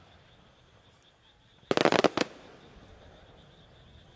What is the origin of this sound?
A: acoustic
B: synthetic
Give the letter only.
A